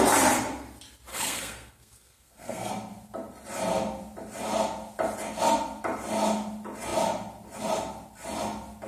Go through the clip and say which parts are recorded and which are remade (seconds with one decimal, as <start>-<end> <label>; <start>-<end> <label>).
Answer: 0.0-1.1 recorded; 1.1-2.7 remade; 2.7-8.9 recorded